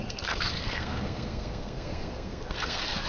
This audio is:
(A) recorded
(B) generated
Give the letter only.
B